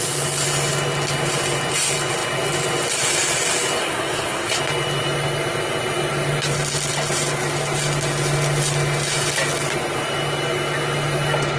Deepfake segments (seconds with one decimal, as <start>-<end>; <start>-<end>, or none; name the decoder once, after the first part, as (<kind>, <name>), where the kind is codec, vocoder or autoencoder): 3.8-4.6 (codec, SNAC)